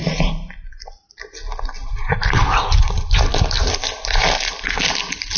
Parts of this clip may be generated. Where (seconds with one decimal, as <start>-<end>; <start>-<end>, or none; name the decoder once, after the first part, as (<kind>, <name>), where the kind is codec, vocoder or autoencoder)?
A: 1.9-5.4 (vocoder, BigVGAN v2)